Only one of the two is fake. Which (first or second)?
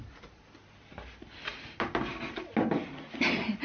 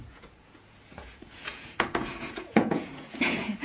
second